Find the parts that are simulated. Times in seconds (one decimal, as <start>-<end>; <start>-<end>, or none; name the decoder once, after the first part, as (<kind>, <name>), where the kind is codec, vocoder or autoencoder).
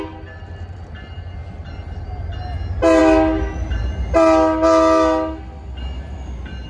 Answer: none